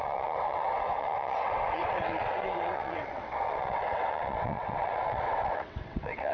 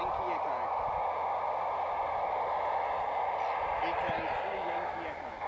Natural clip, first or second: second